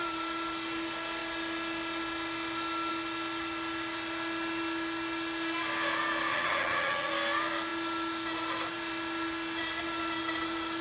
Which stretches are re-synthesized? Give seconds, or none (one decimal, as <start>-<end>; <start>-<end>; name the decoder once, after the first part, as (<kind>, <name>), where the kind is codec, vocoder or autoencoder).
6.3-7.1 (vocoder, HiFi-GAN)